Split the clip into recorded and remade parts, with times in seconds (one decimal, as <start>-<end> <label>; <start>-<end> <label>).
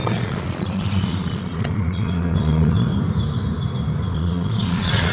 0.0-2.9 remade; 2.9-4.1 recorded; 4.1-5.1 remade